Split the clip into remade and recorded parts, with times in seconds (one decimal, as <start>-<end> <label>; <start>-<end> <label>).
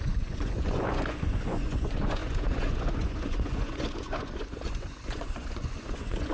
0.0-6.3 remade